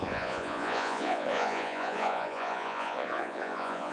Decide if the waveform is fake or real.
fake